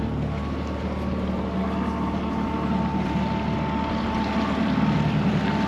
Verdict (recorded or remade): recorded